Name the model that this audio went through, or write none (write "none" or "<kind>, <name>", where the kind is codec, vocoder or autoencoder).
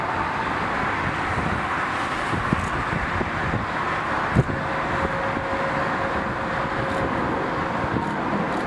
none